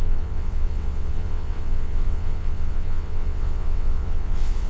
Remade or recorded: remade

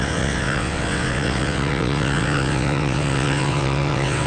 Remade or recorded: remade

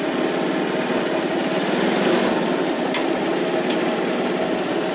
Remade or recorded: recorded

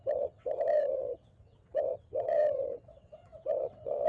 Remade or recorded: remade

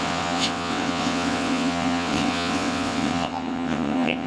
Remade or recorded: remade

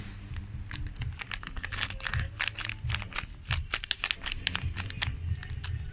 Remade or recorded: recorded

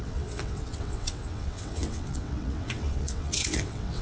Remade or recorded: remade